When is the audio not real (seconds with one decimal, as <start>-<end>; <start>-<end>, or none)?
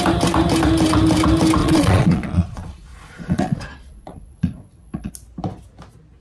1.6-5.1